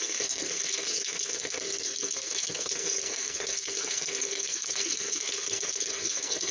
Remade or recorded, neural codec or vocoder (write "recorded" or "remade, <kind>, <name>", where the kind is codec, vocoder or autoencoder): remade, codec, SNAC